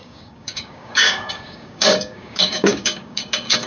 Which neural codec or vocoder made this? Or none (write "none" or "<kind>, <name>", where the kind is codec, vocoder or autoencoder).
codec, DAC